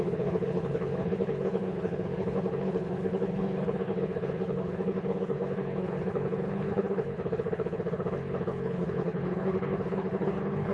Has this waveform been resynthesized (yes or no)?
yes